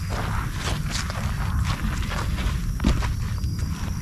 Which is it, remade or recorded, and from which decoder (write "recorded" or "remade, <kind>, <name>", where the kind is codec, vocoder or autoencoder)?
recorded